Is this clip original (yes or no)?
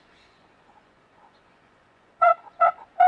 no